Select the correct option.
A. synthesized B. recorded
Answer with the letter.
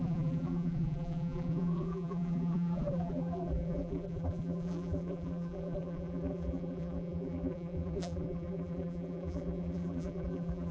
A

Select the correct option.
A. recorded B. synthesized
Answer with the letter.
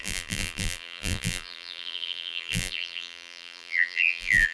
B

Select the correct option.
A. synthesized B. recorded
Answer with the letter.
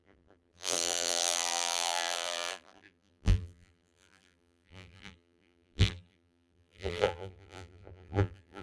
A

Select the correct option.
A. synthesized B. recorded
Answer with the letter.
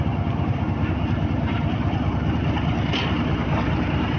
A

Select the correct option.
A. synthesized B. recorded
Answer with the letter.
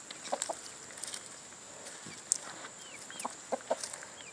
B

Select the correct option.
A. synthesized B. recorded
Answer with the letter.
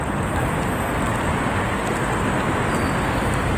B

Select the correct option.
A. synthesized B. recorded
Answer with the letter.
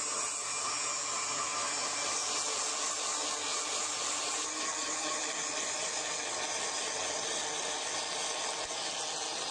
B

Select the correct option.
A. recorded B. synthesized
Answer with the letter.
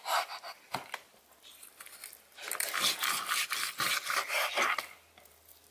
B